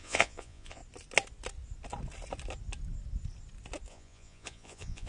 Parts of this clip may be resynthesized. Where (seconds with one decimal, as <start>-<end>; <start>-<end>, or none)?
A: 0.0-0.8; 3.9-5.1